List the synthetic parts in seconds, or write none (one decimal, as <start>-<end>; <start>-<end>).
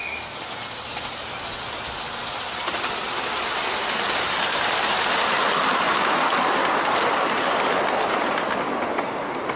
none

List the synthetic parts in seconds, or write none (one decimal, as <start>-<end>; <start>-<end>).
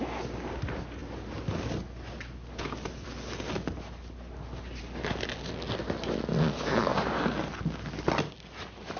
none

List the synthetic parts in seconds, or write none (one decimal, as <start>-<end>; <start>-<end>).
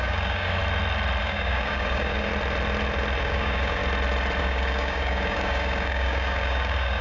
0.0-0.6; 1.2-2.3; 3.2-3.8; 4.4-7.0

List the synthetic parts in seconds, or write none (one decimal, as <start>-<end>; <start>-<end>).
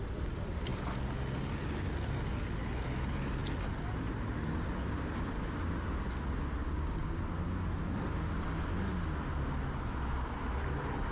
6.6-7.2